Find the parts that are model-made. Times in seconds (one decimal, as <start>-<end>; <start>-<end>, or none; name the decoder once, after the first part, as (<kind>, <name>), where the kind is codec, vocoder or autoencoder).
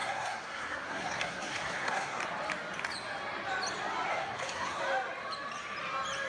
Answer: 0.0-2.2 (codec, SNAC); 4.1-4.8